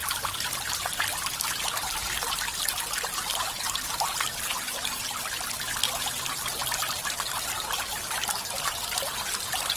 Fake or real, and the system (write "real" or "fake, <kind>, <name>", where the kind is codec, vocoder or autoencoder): real